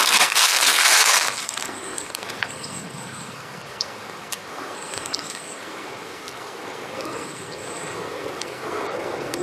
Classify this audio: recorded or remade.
remade